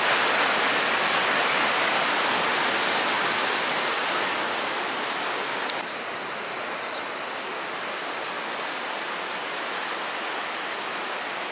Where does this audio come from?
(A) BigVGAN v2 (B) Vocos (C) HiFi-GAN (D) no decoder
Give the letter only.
D